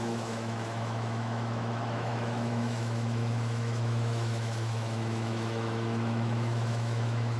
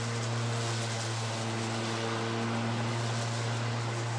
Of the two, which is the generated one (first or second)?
first